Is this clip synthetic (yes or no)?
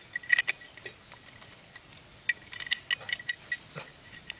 no